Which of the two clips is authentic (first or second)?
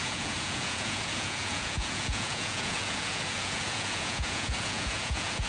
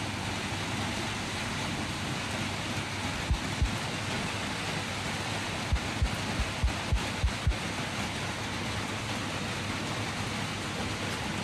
second